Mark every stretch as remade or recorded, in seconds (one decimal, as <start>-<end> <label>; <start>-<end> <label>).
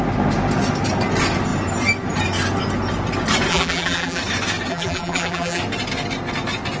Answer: 0.0-3.5 recorded; 3.5-4.2 remade; 4.2-4.7 recorded; 4.7-5.6 remade; 5.6-6.8 recorded